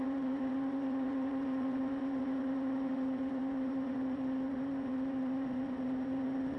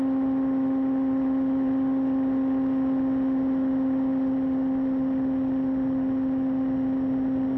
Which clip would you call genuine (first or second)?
second